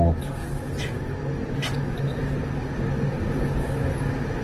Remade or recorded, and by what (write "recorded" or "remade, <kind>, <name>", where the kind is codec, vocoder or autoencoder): recorded